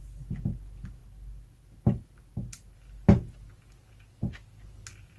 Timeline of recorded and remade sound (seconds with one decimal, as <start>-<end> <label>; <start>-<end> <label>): 0.0-5.2 recorded

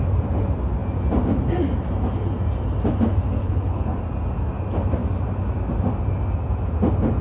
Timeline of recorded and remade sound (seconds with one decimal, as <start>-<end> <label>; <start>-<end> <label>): 0.0-3.4 recorded; 3.4-4.0 remade; 4.0-7.2 recorded

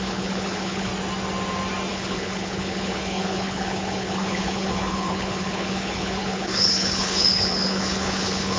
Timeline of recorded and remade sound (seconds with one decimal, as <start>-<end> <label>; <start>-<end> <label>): 0.0-0.9 remade; 0.9-1.9 recorded; 1.9-8.6 remade

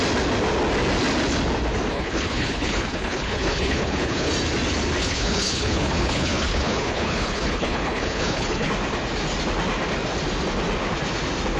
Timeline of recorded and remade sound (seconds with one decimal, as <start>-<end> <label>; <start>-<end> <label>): 0.0-1.9 recorded; 1.9-4.3 remade; 4.3-5.0 recorded; 5.0-8.7 remade; 8.7-11.6 recorded